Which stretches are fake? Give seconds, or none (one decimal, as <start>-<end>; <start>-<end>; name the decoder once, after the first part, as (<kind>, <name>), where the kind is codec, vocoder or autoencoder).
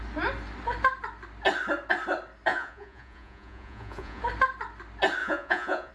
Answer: 2.5-4.2 (vocoder, Vocos); 5.2-5.9